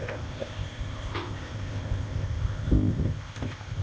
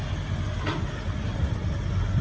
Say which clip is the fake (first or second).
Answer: first